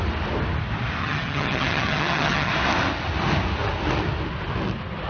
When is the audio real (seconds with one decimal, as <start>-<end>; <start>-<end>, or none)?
0.0-1.0; 2.5-5.1